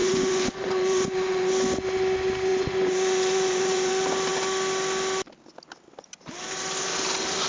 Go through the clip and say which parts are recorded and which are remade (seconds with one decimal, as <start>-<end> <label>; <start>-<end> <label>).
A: 0.0-1.5 remade; 1.5-2.5 recorded; 2.5-3.9 remade; 3.9-7.5 recorded